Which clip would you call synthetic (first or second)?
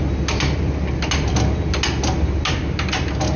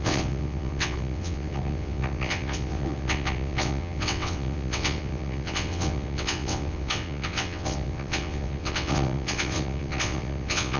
second